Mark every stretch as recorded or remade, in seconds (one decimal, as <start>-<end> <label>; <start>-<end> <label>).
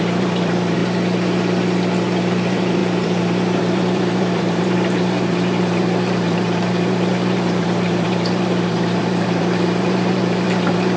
0.0-0.8 remade; 0.8-2.3 recorded; 2.3-11.0 remade